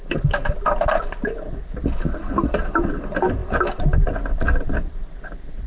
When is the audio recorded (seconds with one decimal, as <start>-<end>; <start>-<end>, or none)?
0.0-5.7